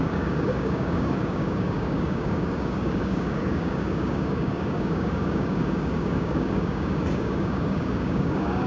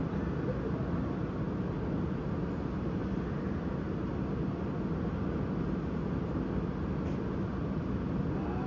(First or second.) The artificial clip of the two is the first